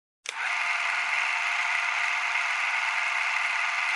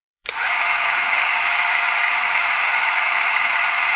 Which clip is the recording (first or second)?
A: first